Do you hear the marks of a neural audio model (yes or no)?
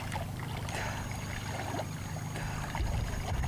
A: no